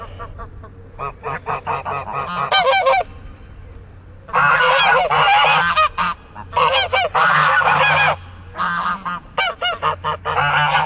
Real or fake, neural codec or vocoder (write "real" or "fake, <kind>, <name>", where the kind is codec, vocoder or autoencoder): real